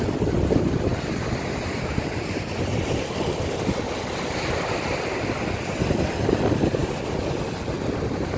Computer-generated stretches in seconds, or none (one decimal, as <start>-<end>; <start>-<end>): none